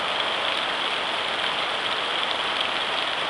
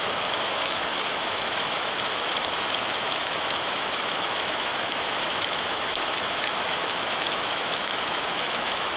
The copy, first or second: second